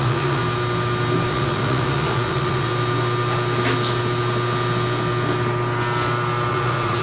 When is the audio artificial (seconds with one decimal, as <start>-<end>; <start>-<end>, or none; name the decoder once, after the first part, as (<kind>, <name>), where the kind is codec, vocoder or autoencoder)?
0.0-0.4 (vocoder, Vocos); 1.3-2.7; 6.5-7.0

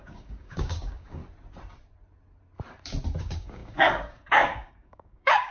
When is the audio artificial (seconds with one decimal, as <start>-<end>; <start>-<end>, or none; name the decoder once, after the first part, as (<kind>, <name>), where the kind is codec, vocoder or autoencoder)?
0.0-1.2 (codec, DAC); 3.2-5.5